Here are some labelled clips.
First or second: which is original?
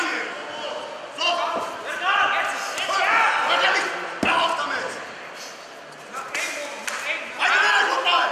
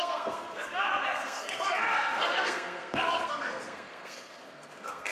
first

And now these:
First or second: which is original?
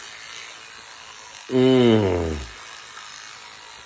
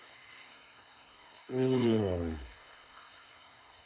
first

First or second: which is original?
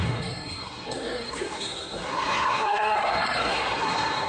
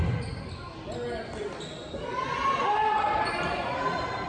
second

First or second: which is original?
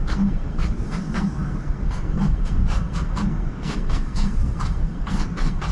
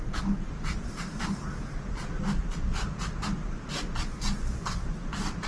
second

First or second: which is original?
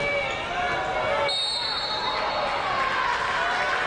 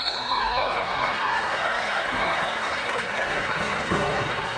first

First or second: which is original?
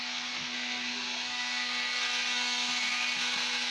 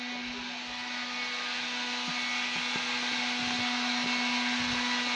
second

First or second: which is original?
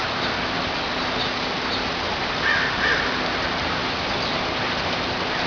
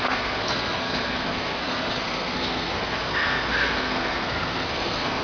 first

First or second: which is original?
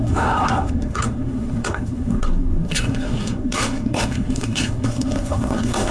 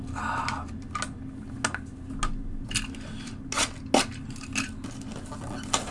second